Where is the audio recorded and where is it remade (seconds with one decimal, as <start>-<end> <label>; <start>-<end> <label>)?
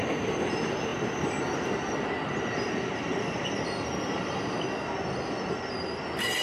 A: 0.0-6.4 recorded